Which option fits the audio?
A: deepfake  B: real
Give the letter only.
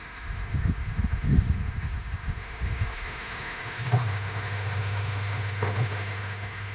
A